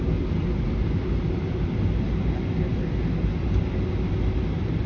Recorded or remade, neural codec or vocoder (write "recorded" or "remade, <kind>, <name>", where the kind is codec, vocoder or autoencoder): recorded